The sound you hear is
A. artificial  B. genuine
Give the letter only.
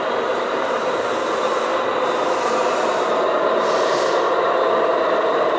B